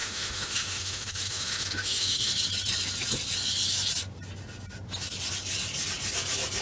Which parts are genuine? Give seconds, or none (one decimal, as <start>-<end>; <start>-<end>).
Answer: 2.3-6.6